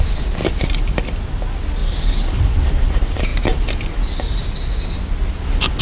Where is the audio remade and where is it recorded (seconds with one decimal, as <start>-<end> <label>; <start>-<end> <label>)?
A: 0.0-5.8 recorded